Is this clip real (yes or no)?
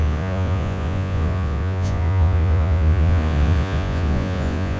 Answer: no